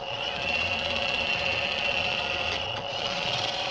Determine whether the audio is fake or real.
fake